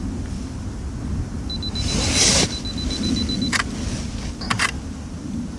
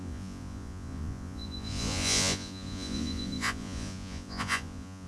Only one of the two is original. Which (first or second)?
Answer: first